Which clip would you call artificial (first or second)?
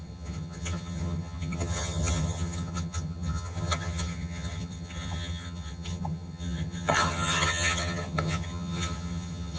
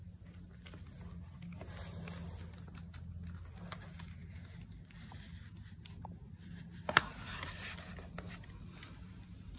first